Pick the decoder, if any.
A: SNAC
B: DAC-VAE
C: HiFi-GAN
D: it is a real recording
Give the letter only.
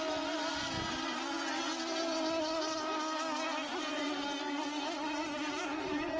D